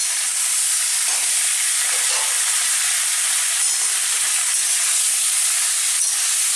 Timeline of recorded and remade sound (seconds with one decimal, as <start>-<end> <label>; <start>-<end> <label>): 0.0-6.6 recorded